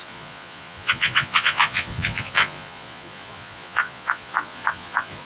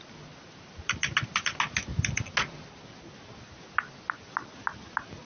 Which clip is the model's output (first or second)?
first